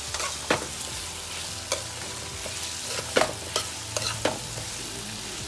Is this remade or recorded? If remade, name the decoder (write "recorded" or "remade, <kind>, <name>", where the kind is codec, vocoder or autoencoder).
recorded